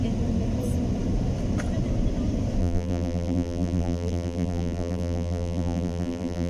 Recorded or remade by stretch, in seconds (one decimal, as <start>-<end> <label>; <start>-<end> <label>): 0.0-2.6 recorded; 2.6-6.5 remade